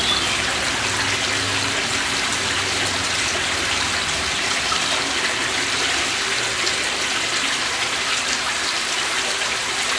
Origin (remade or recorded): recorded